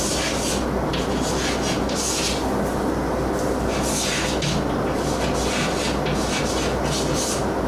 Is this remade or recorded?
recorded